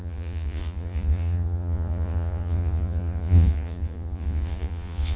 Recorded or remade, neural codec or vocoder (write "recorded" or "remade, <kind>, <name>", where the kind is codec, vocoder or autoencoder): remade, vocoder, Vocos